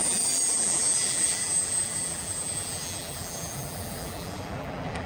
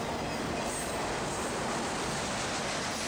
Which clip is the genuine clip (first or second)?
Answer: second